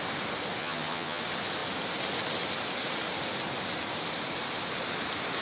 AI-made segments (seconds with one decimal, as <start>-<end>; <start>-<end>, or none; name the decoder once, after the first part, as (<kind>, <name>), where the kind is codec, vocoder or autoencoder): 0.6-1.2 (vocoder, HiFi-GAN)